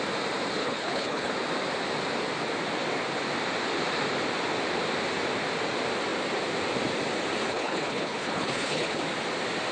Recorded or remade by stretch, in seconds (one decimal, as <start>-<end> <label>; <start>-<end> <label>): 0.0-0.6 recorded; 0.6-1.3 remade; 1.3-7.5 recorded; 7.5-9.0 remade; 9.0-9.7 recorded